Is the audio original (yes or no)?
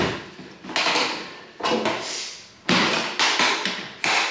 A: yes